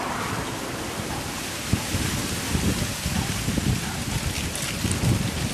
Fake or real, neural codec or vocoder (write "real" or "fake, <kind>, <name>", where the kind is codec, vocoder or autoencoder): real